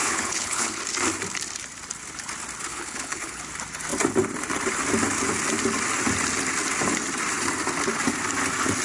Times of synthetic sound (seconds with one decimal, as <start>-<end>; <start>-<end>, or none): 0.0-0.8; 2.7-3.4